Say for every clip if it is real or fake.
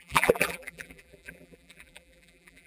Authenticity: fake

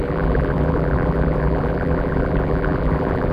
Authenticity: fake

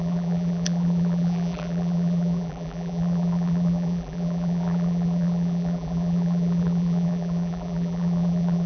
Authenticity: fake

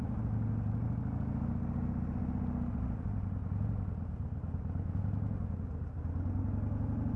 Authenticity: real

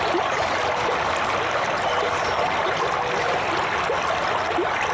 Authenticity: real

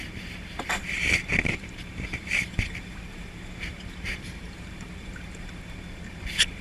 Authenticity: fake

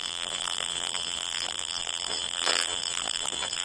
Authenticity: fake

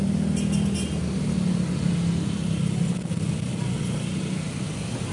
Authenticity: real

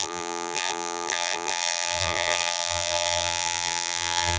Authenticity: fake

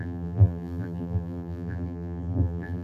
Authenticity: fake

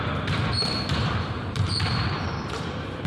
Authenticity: fake